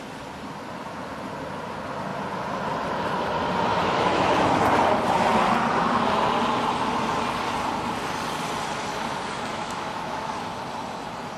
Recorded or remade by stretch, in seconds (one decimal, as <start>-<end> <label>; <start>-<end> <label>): 0.0-3.7 recorded; 3.7-4.6 remade; 4.6-9.5 recorded; 9.5-10.5 remade; 10.5-11.4 recorded